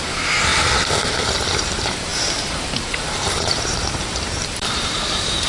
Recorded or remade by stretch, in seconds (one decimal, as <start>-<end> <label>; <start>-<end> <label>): 0.0-0.5 remade; 0.5-1.3 recorded; 1.3-5.5 remade